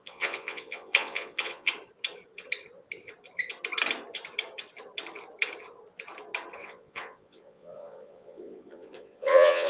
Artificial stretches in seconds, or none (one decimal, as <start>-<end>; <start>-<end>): 0.0-1.7; 6.6-9.7